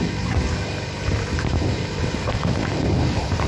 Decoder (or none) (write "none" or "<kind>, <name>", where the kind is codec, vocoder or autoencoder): none